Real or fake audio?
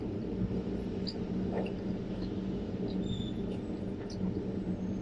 real